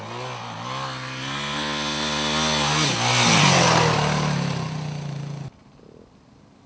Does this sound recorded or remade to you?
recorded